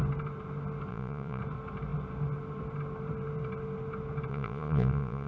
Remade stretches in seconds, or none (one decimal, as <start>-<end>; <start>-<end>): 0.9-1.4; 4.3-5.3